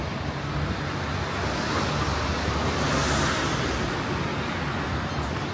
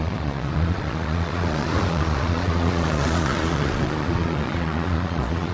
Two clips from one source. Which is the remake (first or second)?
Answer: second